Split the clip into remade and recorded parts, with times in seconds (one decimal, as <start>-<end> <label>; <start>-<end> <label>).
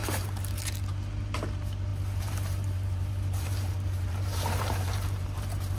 0.0-0.6 remade; 0.6-1.9 recorded; 1.9-5.8 remade